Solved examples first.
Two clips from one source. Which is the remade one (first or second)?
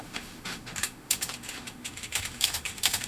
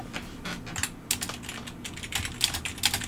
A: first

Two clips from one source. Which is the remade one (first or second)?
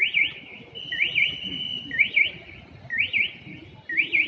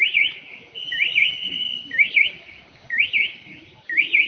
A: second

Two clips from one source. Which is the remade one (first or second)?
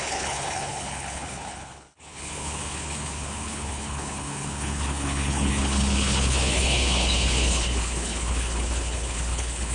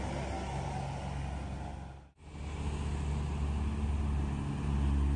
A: first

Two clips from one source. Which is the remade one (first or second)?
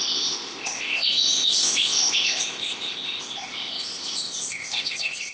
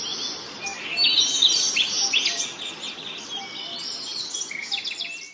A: first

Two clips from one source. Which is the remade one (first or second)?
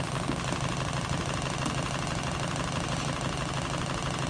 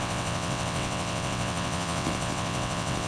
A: second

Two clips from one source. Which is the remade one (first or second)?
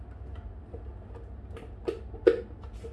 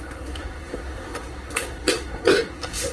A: second